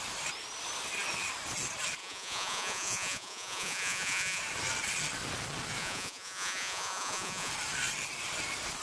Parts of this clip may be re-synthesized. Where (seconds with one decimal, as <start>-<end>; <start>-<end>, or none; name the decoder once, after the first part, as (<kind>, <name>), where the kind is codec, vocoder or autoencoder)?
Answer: 2.0-4.4 (vocoder, Vocos); 5.8-7.5